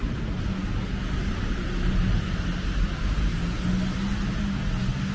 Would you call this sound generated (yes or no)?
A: no